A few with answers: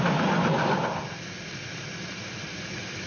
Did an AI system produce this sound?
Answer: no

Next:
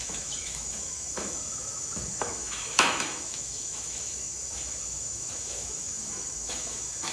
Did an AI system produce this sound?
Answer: yes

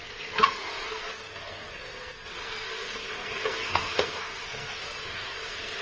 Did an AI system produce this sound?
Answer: yes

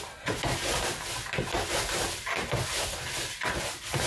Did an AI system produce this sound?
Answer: no